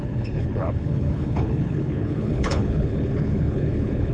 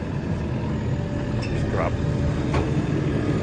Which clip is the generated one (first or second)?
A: first